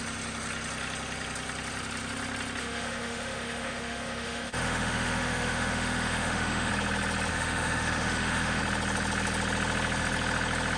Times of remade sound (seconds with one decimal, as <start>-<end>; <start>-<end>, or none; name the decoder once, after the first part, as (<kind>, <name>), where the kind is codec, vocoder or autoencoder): 2.6-6.7 (autoencoder, DAC-VAE); 7.3-8.6